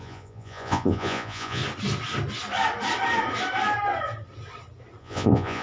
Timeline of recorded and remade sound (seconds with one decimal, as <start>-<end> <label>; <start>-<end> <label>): 0.0-1.6 remade; 1.6-5.0 recorded; 5.0-5.6 remade